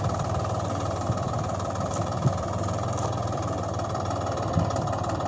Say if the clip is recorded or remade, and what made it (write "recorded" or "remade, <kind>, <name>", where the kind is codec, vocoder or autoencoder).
remade, vocoder, BigVGAN v2